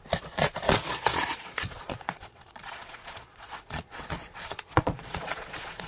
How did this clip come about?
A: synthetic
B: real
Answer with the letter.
A